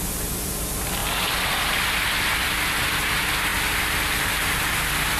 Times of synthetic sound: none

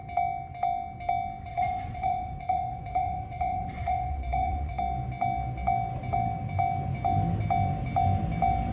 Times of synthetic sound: 1.5-4.8